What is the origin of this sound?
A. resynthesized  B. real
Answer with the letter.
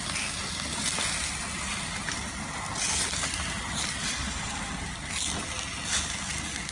B